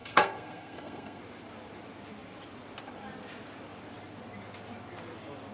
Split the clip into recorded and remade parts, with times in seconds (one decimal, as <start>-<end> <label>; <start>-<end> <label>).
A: 0.0-1.2 remade; 1.2-5.5 recorded